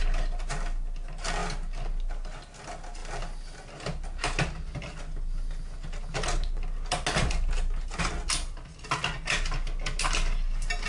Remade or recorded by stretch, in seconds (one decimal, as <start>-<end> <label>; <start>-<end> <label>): 0.0-10.9 recorded